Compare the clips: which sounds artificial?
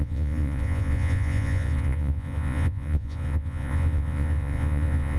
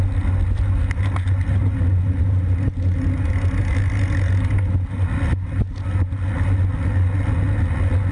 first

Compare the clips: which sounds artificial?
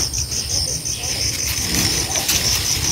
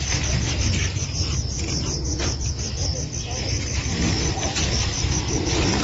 first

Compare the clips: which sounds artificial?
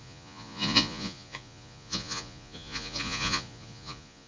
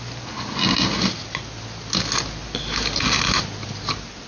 first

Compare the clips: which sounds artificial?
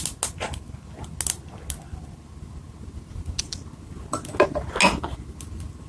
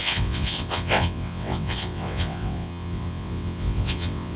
second